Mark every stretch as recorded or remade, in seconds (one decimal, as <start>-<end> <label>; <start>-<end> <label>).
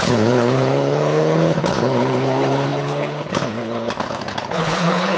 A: 0.0-5.2 remade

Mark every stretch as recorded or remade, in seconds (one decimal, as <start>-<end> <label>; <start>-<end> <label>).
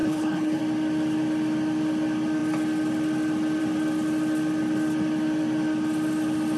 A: 0.0-0.6 remade; 0.6-6.6 recorded